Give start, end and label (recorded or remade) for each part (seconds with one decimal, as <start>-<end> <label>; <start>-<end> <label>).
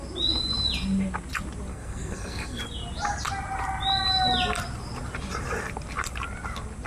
0.0-1.7 recorded; 1.7-2.6 remade; 2.6-6.9 recorded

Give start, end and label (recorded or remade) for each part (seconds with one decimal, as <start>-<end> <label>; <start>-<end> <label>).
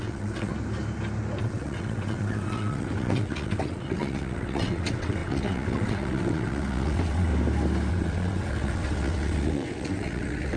0.0-0.5 remade; 0.5-1.4 recorded; 1.4-7.3 remade; 7.3-7.9 recorded; 7.9-10.6 remade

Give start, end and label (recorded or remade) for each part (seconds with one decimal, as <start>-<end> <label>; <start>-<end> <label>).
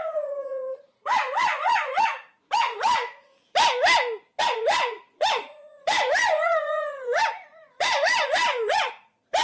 0.0-3.3 remade; 3.3-4.4 recorded; 4.4-9.4 remade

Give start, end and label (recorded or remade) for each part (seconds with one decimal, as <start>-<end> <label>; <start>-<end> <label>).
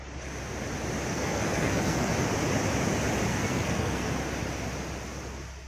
0.0-1.1 recorded; 1.1-2.1 remade; 2.1-3.3 recorded; 3.3-4.1 remade; 4.1-5.7 recorded